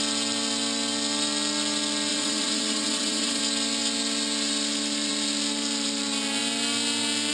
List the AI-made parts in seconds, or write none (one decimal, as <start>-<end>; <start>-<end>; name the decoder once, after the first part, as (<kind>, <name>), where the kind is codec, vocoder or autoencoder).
2.1-3.4 (vocoder, WaveNeXt)